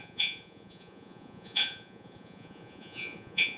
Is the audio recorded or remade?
remade